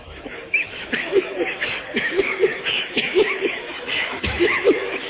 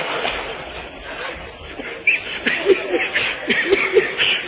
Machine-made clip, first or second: first